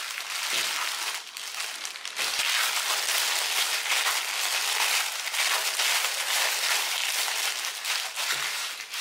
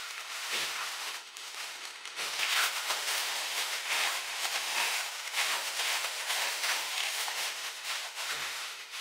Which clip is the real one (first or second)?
first